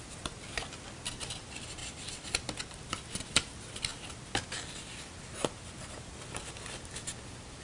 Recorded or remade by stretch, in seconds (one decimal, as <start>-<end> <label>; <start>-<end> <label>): 0.0-7.6 recorded